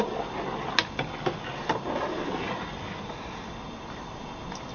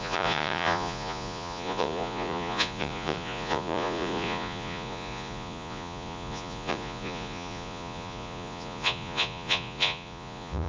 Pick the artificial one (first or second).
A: second